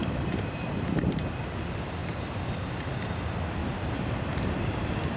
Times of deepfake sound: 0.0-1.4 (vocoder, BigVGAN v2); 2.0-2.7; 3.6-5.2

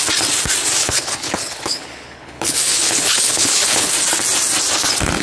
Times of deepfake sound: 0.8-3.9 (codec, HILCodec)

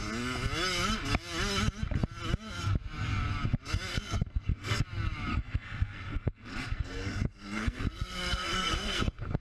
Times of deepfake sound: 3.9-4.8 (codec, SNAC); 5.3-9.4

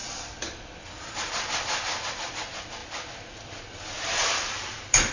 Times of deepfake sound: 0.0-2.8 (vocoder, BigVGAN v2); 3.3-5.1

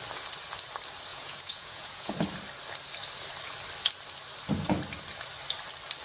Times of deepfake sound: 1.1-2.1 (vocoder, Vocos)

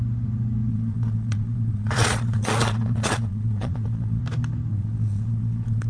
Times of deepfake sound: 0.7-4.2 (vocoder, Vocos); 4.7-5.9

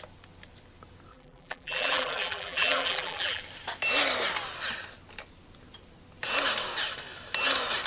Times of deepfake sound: 1.1-3.4 (vocoder, BigVGAN v2)

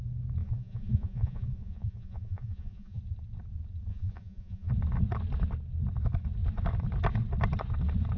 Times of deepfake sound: 0.4-3.0 (vocoder, Vocos); 3.9-4.7